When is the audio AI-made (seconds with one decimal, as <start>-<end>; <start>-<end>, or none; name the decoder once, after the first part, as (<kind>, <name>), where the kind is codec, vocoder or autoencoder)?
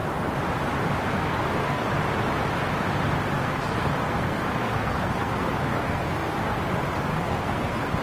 1.1-1.8 (codec, SNAC); 3.4-6.6; 7.1-8.0